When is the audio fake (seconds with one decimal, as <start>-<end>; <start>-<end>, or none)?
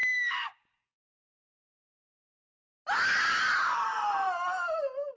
0.0-1.1